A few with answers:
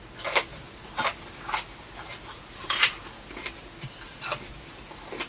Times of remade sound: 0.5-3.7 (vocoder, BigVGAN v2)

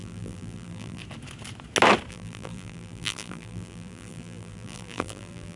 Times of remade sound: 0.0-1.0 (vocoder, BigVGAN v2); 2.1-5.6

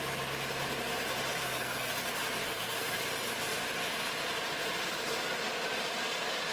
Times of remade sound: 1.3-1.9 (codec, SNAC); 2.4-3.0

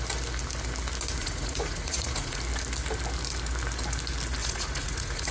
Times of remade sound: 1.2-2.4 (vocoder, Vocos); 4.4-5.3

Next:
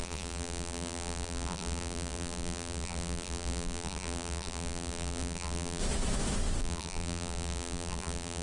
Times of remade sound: 0.0-5.8 (vocoder, BigVGAN v2); 6.6-8.4

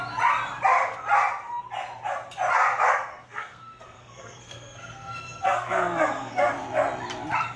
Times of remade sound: 3.2-6.5 (codec, SNAC)

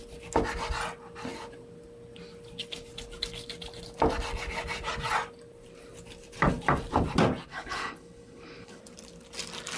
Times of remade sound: 7.5-8.8 (codec, HILCodec)